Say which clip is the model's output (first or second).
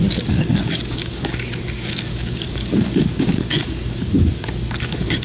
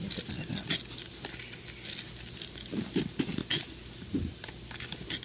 first